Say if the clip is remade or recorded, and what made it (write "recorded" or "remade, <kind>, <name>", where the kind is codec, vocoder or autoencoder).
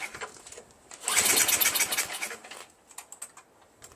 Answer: recorded